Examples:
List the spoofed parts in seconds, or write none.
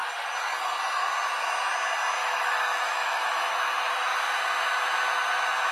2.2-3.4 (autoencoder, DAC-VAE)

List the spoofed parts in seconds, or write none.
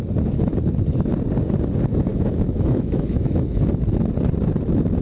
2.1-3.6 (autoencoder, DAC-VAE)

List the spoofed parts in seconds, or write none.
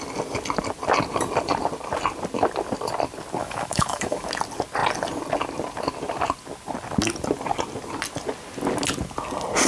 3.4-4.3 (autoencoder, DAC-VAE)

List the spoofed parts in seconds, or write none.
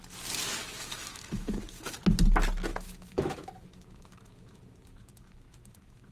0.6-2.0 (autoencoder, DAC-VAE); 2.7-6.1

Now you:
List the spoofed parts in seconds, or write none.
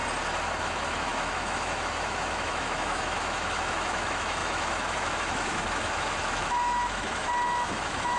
0.6-8.2 (autoencoder, DAC-VAE)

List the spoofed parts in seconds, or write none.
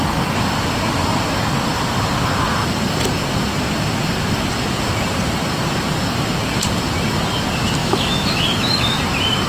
7.8-9.0 (autoencoder, DAC-VAE)